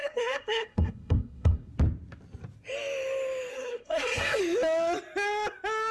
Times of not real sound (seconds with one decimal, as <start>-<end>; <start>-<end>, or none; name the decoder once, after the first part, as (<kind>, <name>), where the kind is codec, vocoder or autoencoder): 0.0-1.7 (codec, SNAC); 3.5-4.4